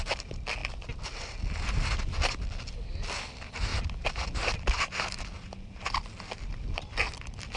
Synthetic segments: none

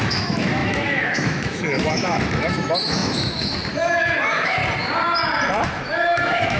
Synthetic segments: 0.0-4.6; 5.6-6.6

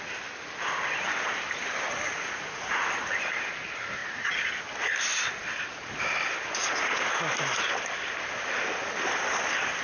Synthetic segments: 2.1-2.8; 4.0-4.5; 6.6-7.1

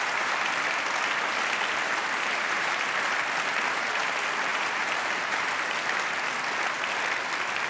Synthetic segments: 2.0-2.7; 4.5-5.4

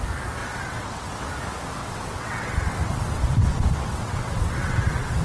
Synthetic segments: 0.4-1.3; 1.8-5.2

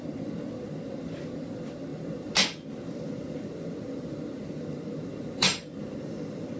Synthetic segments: none

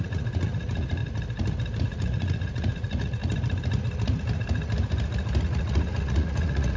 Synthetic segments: 0.0-1.0; 1.8-3.2; 5.4-6.8